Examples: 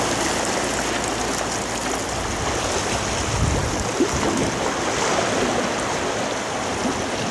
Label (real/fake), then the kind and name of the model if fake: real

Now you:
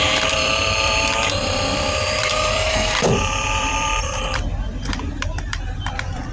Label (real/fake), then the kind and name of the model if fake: fake, vocoder, BigVGAN v2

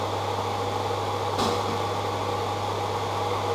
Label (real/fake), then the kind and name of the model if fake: real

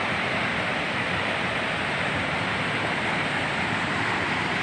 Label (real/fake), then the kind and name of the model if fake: fake, vocoder, BigVGAN v2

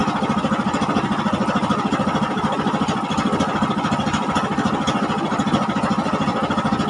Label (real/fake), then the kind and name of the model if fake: real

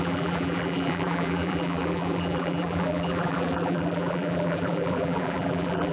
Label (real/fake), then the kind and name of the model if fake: fake, vocoder, BigVGAN v2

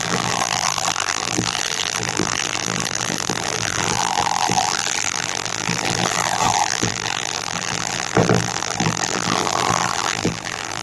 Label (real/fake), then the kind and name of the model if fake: fake, vocoder, BigVGAN v2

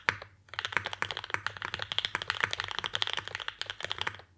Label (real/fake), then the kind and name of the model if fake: real